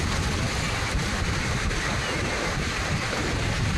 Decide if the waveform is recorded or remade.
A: recorded